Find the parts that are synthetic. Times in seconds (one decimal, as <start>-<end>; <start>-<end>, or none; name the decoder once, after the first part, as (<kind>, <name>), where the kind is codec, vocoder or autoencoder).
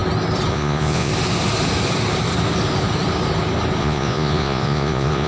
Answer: 0.5-1.1 (vocoder, Vocos); 3.8-5.3